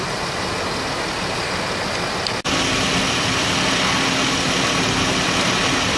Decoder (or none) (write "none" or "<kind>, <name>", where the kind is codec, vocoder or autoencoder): none